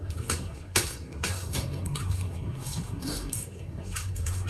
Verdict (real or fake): fake